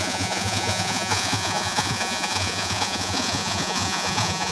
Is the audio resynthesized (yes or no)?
yes